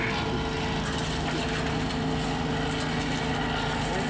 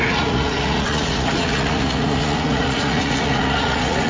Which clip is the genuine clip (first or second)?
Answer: first